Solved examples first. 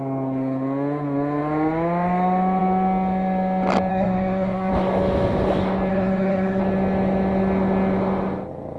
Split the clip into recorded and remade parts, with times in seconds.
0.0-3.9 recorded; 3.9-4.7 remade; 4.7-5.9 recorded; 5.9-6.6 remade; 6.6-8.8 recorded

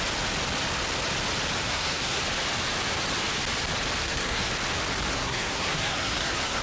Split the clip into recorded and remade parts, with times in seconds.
0.0-1.6 recorded; 1.6-2.2 remade; 2.2-4.0 recorded; 4.0-4.5 remade; 4.5-5.1 recorded; 5.1-6.6 remade